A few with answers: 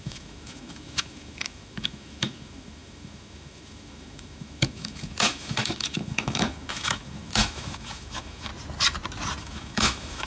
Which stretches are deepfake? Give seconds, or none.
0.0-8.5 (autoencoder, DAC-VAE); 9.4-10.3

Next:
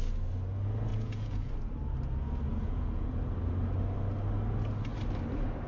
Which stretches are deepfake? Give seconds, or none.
0.9-1.5 (vocoder, Vocos); 2.5-3.2